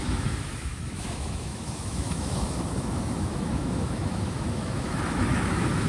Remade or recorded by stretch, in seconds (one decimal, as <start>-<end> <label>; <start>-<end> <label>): 0.0-5.9 remade